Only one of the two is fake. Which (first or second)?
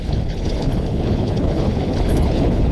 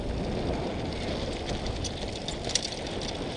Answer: first